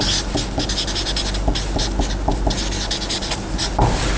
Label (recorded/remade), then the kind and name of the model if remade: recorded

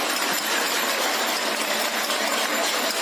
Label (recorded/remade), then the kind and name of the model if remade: remade, vocoder, BigVGAN v2